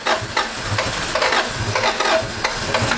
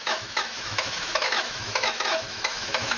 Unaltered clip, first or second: first